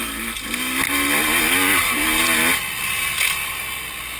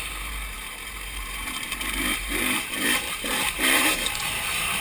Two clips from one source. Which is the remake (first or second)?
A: second